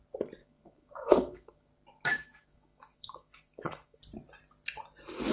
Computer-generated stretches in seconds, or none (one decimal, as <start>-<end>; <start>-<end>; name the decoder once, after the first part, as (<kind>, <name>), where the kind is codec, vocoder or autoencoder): 0.4-1.7 (autoencoder, DAC-VAE); 2.1-4.0